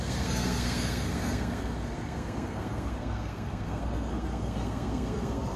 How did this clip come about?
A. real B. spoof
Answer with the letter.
B